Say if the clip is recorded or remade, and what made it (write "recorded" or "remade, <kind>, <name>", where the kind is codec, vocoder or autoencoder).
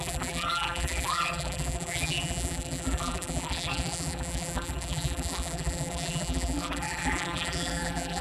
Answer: remade, vocoder, BigVGAN v2